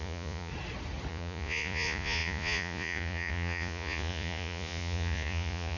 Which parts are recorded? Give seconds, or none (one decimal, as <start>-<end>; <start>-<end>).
0.5-1.1

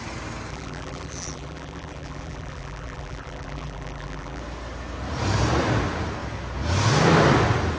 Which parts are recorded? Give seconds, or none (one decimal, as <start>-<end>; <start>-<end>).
0.0-0.5; 4.4-7.8

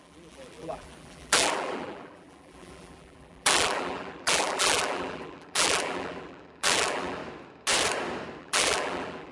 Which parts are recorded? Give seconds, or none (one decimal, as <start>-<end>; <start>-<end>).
7.2-8.4